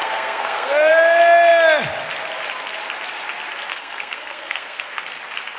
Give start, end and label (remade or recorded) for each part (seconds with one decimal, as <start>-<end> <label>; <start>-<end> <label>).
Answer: 0.0-0.9 remade; 0.9-3.7 recorded; 3.7-5.0 remade; 5.0-5.6 recorded